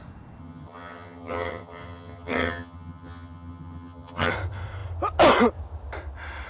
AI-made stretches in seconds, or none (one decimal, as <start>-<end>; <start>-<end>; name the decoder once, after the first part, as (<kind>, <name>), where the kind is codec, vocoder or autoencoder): 0.4-4.3 (vocoder, HiFi-GAN)